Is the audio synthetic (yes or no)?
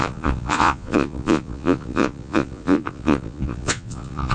yes